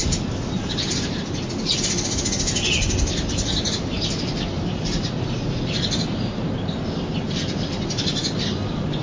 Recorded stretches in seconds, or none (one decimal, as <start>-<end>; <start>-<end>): 0.0-9.0